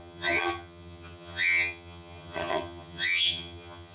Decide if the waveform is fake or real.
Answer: fake